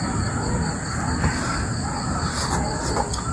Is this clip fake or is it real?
real